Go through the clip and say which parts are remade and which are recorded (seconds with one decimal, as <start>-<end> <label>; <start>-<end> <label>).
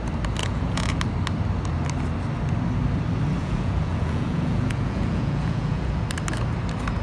0.0-0.4 recorded; 0.4-1.0 remade; 1.0-3.4 recorded; 3.4-6.0 remade; 6.0-7.0 recorded